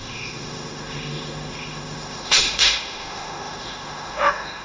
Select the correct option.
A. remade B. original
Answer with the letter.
A